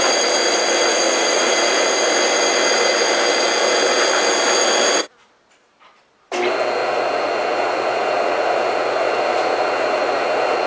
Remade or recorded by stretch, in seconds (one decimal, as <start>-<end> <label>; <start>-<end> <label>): 0.0-0.9 recorded; 0.9-1.5 remade; 1.5-6.8 recorded; 6.8-10.7 remade